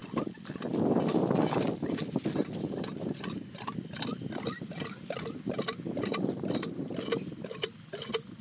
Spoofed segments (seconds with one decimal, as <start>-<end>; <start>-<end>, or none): none